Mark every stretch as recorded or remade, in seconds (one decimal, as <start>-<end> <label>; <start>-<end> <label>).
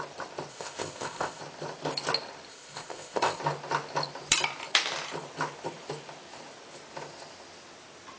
0.0-0.5 recorded; 0.5-1.4 remade; 1.4-2.5 recorded; 2.5-3.4 remade; 3.4-8.2 recorded